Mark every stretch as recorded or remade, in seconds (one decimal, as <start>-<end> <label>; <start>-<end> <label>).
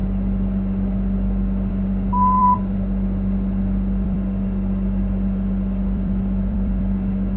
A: 0.0-2.4 recorded; 2.4-6.8 remade; 6.8-7.4 recorded